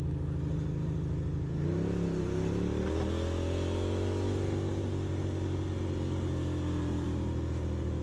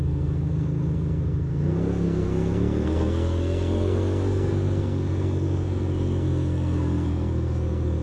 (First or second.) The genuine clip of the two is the first